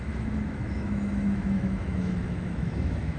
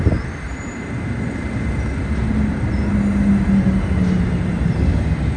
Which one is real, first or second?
second